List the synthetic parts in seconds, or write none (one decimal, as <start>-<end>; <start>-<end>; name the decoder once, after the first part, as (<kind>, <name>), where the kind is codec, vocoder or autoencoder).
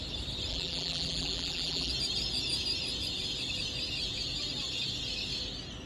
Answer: 0.5-1.9 (vocoder, BigVGAN v2)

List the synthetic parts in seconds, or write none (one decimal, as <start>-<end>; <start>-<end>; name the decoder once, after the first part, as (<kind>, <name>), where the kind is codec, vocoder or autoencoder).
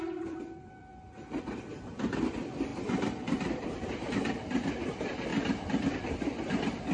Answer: 0.0-0.9 (vocoder, BigVGAN v2); 2.3-6.9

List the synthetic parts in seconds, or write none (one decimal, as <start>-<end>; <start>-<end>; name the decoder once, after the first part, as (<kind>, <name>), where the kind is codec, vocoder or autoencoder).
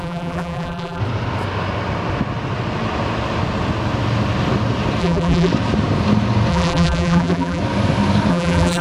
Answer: 0.0-1.0 (vocoder, BigVGAN v2); 5.0-5.5; 6.5-7.6; 8.3-8.8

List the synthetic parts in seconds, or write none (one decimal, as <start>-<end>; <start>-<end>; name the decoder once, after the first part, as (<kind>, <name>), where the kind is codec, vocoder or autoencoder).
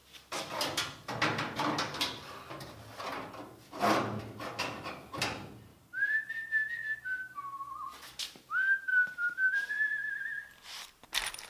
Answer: 5.7-6.3 (vocoder, BigVGAN v2); 8.9-10.2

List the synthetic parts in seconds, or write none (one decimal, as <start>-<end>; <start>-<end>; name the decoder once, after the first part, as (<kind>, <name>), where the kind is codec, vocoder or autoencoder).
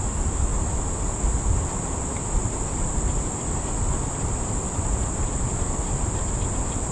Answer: 2.9-6.2 (vocoder, BigVGAN v2)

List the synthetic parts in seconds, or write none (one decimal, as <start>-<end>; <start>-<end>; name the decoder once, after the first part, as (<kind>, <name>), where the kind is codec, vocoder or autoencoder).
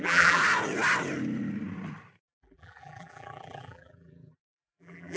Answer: 0.0-0.4 (vocoder, BigVGAN v2); 2.2-5.2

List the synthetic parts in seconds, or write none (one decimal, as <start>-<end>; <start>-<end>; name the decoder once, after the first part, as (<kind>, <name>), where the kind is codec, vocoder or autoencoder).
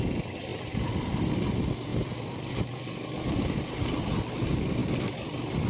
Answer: 0.5-1.1 (vocoder, BigVGAN v2); 1.9-3.8